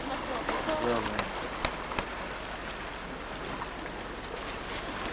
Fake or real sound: real